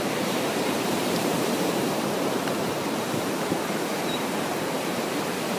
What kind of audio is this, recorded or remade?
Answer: remade